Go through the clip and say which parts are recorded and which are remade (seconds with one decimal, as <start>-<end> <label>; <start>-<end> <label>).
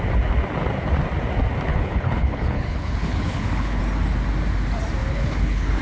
0.0-1.7 recorded; 1.7-3.8 remade; 3.8-5.0 recorded; 5.0-5.8 remade